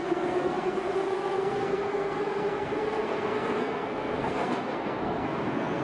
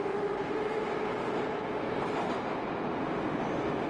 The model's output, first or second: first